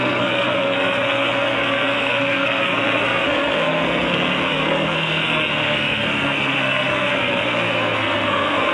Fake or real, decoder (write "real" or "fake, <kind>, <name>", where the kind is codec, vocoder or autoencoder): fake, codec, SNAC